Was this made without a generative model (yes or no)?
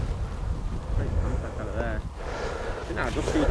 yes